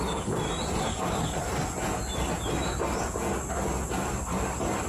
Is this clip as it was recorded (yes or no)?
yes